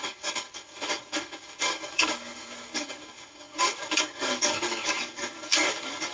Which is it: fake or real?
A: fake